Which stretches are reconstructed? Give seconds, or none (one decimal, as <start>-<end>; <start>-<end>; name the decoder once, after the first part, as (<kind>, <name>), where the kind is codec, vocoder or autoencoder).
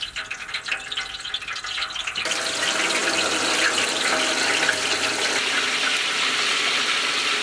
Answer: none